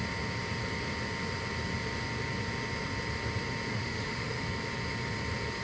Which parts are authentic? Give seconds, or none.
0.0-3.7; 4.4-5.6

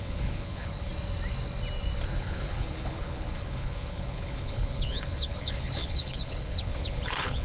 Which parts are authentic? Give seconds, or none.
0.9-2.2

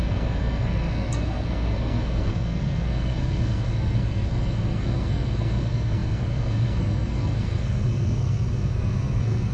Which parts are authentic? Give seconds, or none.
none

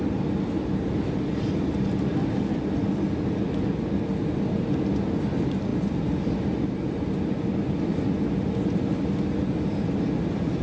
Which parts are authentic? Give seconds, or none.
0.0-10.6

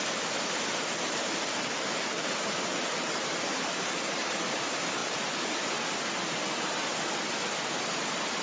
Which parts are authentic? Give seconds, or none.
0.0-8.4

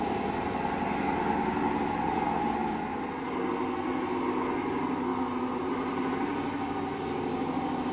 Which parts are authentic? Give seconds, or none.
0.0-5.1; 5.7-7.9

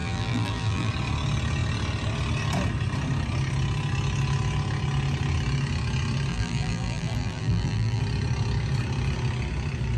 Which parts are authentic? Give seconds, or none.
0.9-6.3; 8.0-10.0